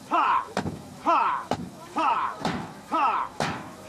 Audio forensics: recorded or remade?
remade